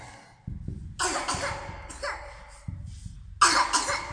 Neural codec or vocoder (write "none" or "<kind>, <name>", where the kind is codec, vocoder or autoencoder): none